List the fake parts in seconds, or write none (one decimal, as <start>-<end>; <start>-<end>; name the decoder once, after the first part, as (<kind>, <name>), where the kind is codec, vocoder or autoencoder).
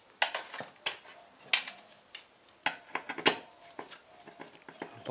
none